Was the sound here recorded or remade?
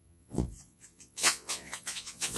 remade